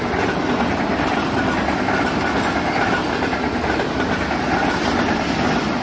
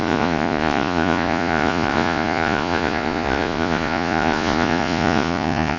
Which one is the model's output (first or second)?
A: second